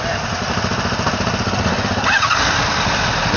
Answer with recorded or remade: recorded